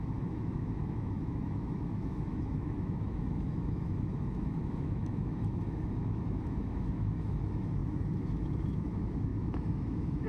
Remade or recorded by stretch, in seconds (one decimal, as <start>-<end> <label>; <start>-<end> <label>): 0.0-10.3 remade